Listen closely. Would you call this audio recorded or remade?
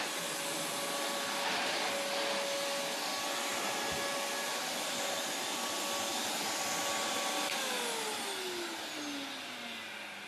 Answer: recorded